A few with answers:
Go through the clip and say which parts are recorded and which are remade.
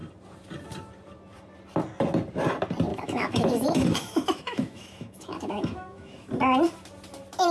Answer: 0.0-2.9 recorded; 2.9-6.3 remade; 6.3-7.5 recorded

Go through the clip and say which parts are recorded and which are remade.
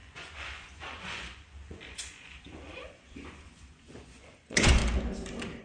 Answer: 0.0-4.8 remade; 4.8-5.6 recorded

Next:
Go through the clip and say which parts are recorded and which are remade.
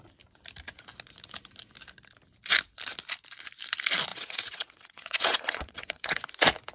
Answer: 0.0-4.1 recorded; 4.1-6.2 remade; 6.2-6.7 recorded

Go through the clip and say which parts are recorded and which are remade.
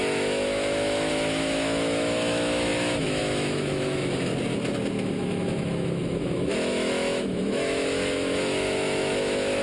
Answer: 0.0-4.3 remade; 4.3-5.0 recorded; 5.0-9.6 remade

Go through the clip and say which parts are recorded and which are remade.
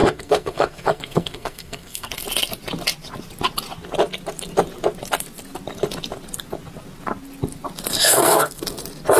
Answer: 0.0-2.1 remade; 2.1-8.0 recorded; 8.0-8.6 remade; 8.6-9.2 recorded